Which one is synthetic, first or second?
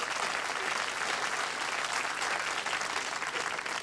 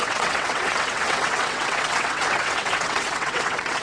second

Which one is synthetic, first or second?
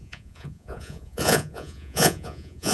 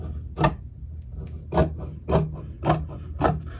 first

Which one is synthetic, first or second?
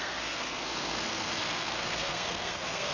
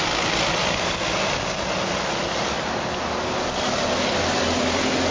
first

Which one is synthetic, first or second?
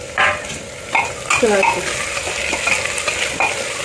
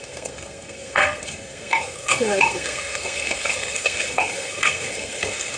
second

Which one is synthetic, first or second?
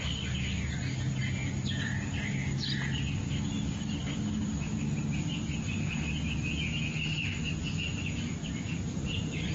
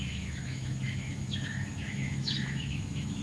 second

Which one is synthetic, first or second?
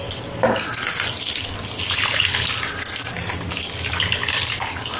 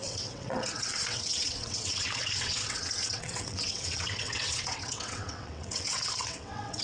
second